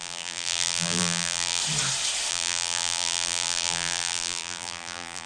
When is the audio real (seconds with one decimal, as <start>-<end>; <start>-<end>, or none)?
1.6-2.3